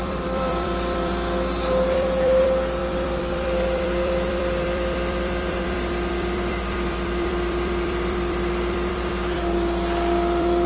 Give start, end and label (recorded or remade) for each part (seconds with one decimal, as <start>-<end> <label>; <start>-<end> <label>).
0.0-10.7 remade